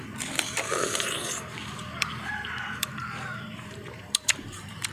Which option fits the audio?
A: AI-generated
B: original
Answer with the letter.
A